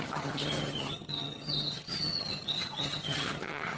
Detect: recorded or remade remade